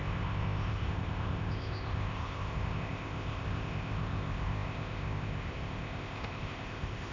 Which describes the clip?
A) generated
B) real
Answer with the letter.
A